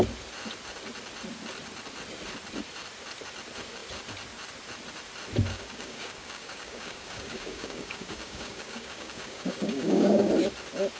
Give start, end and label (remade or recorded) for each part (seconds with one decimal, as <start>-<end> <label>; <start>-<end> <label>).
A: 0.0-5.5 recorded; 5.5-10.3 remade; 10.3-11.0 recorded